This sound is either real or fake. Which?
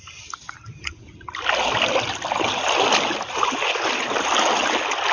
real